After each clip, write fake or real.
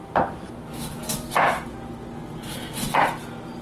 real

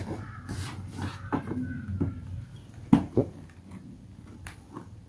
real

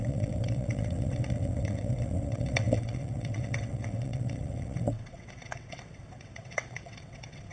fake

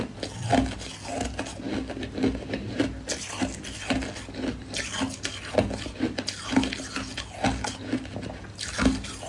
real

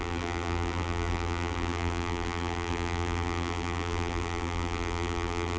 fake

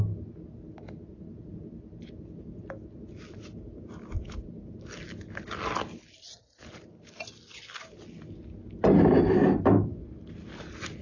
real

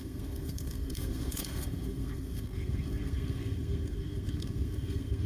fake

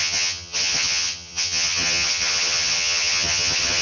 fake